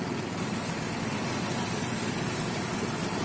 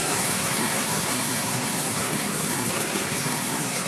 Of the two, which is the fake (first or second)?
second